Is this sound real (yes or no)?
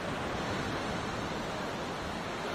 yes